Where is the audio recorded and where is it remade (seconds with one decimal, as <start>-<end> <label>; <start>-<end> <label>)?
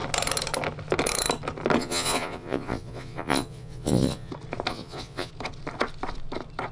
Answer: 0.0-1.8 recorded; 1.8-4.3 remade; 4.3-4.7 recorded; 4.7-5.3 remade; 5.3-6.7 recorded